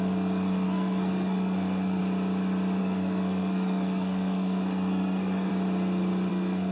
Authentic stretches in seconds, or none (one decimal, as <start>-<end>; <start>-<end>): 2.0-2.8; 5.5-6.3